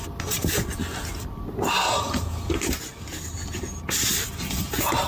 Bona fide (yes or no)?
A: yes